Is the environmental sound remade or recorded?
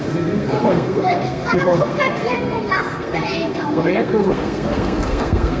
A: remade